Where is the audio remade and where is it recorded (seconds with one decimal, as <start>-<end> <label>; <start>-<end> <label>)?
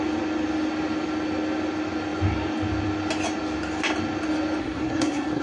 0.0-4.6 recorded; 4.6-5.4 remade